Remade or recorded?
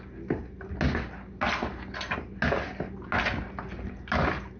recorded